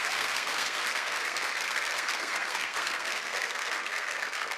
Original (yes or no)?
no